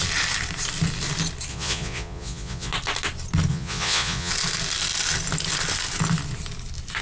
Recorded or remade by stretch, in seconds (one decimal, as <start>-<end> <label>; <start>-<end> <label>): 0.0-1.5 recorded; 1.5-2.7 remade; 2.7-3.5 recorded; 3.5-4.3 remade; 4.3-7.0 recorded